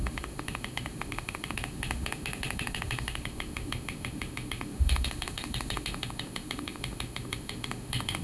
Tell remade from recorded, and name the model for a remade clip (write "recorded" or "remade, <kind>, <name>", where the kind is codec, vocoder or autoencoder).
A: remade, autoencoder, DAC-VAE